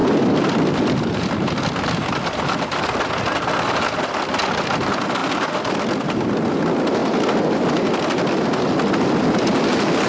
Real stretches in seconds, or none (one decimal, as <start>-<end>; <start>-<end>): 0.0-10.1